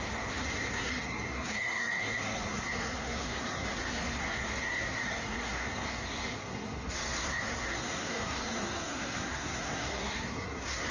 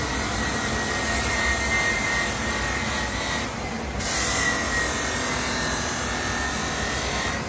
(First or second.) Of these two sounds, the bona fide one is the second